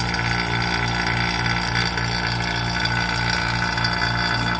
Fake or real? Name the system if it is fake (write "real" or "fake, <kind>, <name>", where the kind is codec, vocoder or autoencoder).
real